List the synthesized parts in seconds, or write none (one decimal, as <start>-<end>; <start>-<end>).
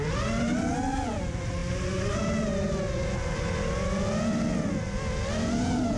none